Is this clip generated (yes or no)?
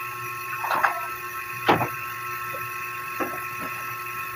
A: no